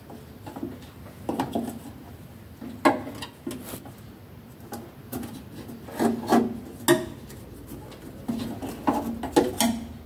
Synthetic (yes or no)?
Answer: no